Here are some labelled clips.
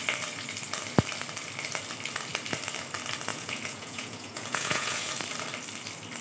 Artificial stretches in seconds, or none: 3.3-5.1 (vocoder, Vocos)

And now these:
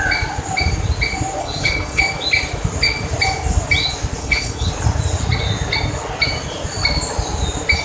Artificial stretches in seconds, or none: 1.4-2.0 (codec, HILCodec); 4.2-4.7

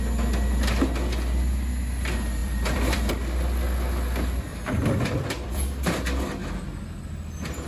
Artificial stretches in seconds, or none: 2.4-3.1 (vocoder, BigVGAN v2); 4.5-5.6

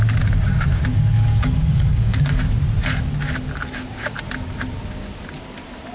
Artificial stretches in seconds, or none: 0.9-2.4 (codec, DAC)